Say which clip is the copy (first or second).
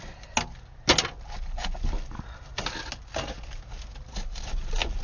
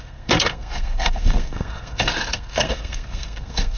second